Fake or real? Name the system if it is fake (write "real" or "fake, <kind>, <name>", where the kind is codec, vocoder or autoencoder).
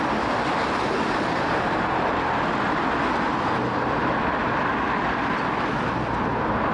real